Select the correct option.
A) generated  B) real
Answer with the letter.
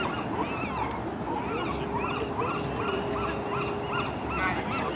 B